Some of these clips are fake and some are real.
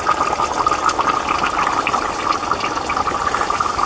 real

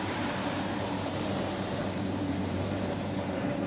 fake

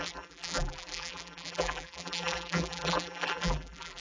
fake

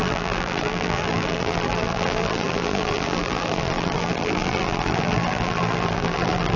fake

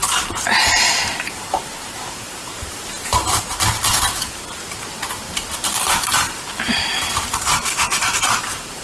fake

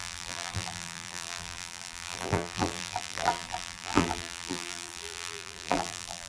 fake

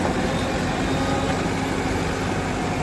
real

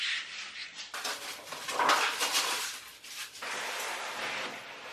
real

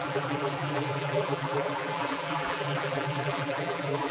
fake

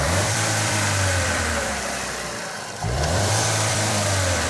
fake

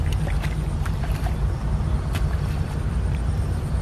fake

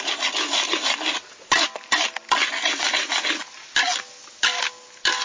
real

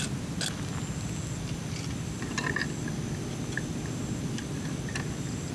real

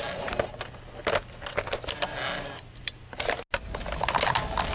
real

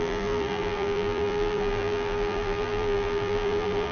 fake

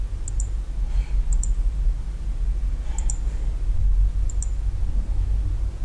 real